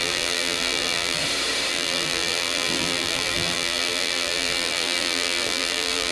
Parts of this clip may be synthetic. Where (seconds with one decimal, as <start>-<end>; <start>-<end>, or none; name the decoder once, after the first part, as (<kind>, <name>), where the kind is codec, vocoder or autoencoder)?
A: 0.0-1.2 (vocoder, BigVGAN v2); 1.7-6.1